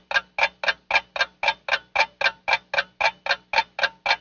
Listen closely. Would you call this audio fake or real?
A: real